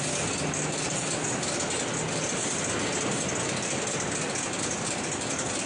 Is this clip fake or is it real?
real